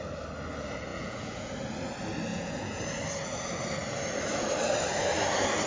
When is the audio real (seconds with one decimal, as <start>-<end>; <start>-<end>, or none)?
0.0-0.9; 1.5-2.3; 2.8-5.7

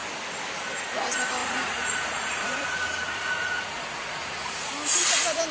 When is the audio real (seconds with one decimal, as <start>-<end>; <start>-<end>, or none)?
0.0-1.4; 4.7-5.5

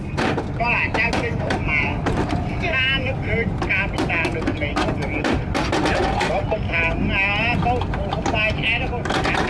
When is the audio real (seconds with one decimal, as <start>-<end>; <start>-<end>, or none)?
0.0-9.5

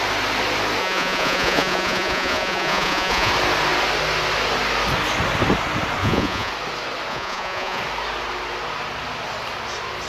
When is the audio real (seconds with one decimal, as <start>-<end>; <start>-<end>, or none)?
0.0-0.8; 3.3-6.0; 6.5-7.1; 7.8-10.1

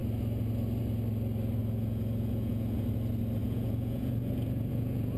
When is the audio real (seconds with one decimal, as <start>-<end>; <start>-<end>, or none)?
0.0-1.6; 2.9-3.4

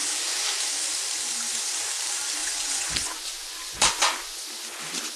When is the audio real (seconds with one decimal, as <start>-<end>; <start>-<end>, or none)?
0.0-2.4; 4.4-5.2

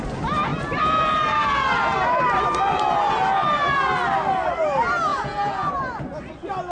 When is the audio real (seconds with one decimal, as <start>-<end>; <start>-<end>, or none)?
0.0-5.1; 5.7-6.7